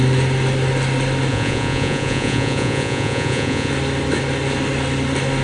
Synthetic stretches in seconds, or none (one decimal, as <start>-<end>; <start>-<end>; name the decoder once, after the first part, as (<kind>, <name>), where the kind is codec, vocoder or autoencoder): 1.3-3.7 (vocoder, Vocos)